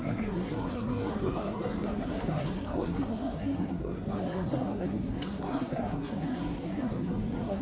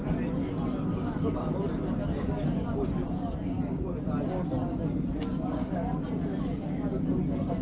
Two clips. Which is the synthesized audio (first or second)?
first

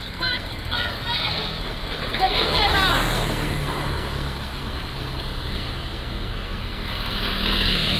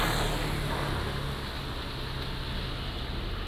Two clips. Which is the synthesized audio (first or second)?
first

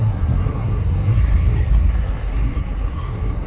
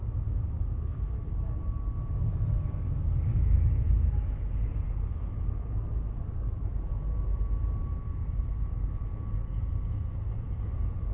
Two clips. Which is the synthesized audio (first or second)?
first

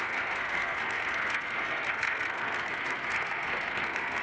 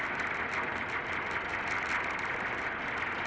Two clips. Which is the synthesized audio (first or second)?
first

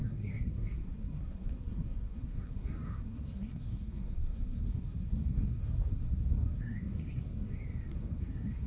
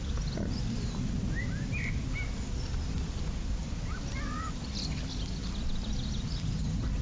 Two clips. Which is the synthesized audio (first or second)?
first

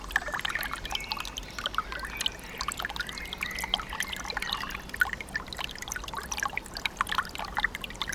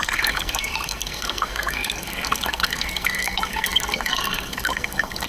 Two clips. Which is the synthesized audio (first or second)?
second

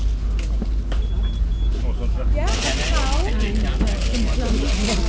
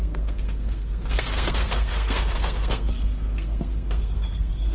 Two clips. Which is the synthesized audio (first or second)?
second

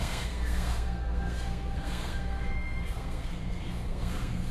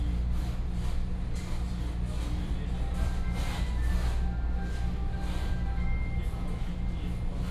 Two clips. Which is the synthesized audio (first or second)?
first